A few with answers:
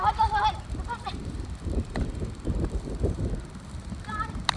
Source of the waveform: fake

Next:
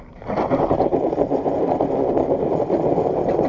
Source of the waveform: real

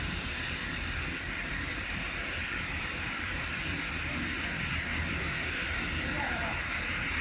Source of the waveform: fake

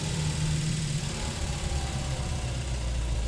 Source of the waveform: fake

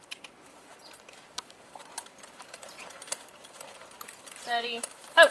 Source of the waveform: fake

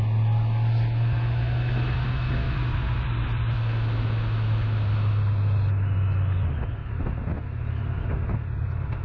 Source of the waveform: real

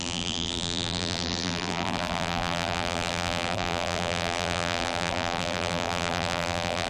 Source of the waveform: fake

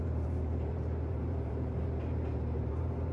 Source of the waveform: fake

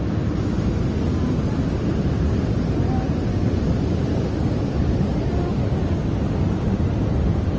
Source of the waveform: real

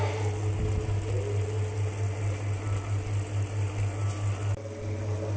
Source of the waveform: real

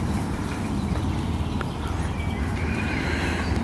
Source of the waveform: real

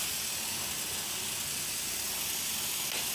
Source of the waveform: real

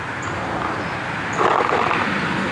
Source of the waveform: real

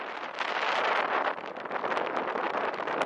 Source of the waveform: real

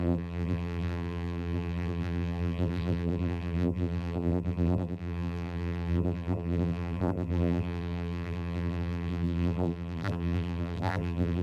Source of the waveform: fake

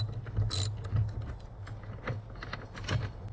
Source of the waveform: real